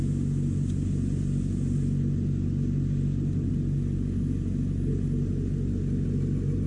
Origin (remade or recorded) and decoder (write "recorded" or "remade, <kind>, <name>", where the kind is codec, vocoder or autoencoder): recorded